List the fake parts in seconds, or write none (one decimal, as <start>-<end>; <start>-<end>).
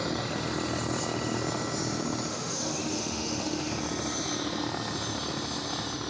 2.3-3.7